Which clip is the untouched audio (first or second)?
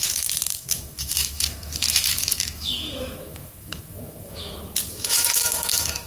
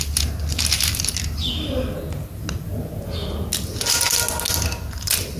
second